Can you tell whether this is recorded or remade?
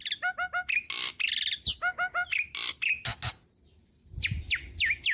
recorded